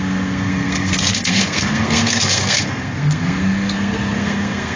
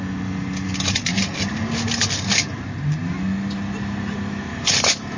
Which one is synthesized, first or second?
first